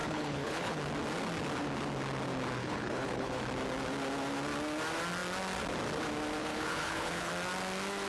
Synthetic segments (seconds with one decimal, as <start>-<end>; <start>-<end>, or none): 0.0-0.8; 2.6-3.4; 6.4-7.3

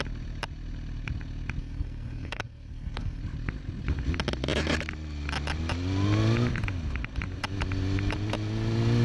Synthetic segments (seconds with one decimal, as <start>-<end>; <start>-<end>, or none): 1.6-3.2